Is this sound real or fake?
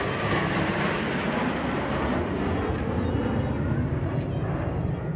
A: real